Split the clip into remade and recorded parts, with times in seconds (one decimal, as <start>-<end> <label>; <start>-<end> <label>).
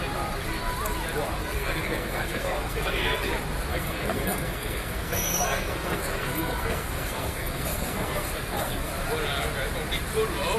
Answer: 0.0-1.4 recorded; 1.4-3.3 remade; 3.3-3.7 recorded; 3.7-8.9 remade; 8.9-10.6 recorded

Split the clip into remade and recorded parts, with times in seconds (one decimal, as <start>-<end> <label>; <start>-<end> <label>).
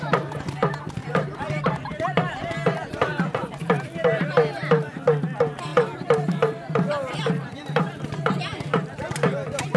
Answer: 0.0-1.0 recorded; 1.0-2.5 remade; 2.5-3.1 recorded; 3.1-4.2 remade; 4.2-5.7 recorded; 5.7-8.6 remade; 8.6-9.8 recorded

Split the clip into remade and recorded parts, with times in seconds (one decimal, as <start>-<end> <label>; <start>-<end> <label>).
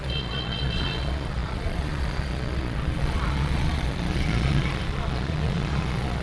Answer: 0.0-6.2 remade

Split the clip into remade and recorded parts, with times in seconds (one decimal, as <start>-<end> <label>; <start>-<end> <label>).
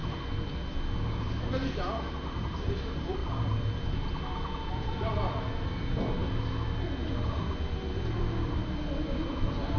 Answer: 0.0-1.0 recorded; 1.0-1.6 remade; 1.6-2.1 recorded; 2.1-3.2 remade; 3.2-4.7 recorded; 4.7-6.2 remade; 6.2-7.7 recorded; 7.7-9.8 remade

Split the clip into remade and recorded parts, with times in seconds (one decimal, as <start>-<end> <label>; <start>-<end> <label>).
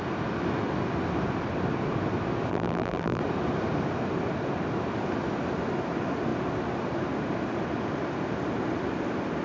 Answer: 0.0-2.5 recorded; 2.5-3.2 remade; 3.2-9.4 recorded